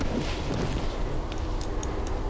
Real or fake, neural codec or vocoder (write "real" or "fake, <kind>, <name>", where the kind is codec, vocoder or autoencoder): fake, vocoder, BigVGAN v2